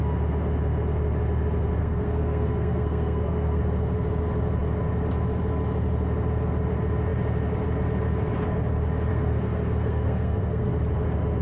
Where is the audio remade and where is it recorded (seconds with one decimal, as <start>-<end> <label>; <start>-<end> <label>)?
0.0-1.8 recorded; 1.8-3.6 remade; 3.6-9.1 recorded; 9.1-10.7 remade; 10.7-11.4 recorded

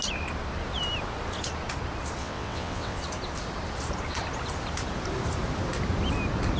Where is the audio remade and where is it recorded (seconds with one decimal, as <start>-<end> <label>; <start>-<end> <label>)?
0.0-2.2 recorded; 2.2-3.0 remade; 3.0-6.6 recorded

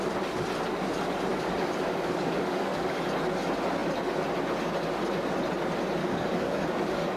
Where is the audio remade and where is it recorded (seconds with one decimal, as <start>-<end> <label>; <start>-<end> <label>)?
0.0-1.3 recorded; 1.3-3.0 remade; 3.0-6.0 recorded; 6.0-7.2 remade

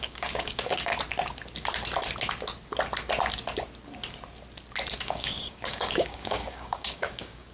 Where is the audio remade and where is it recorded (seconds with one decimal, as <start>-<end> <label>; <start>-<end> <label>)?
0.0-0.9 remade; 0.9-5.0 recorded; 5.0-7.5 remade

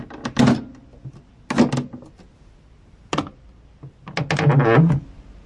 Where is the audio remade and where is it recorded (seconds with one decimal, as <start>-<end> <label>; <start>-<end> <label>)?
0.0-5.5 recorded

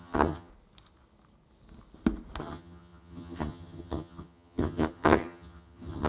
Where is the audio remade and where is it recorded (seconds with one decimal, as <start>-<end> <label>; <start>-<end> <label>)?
0.0-0.5 remade; 0.5-2.4 recorded; 2.4-6.1 remade

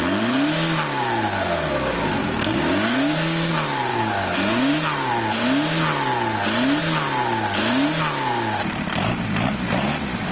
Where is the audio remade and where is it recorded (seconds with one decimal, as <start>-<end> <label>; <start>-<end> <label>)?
0.0-2.2 recorded; 2.2-3.5 remade; 3.5-3.9 recorded; 3.9-5.1 remade; 5.1-10.3 recorded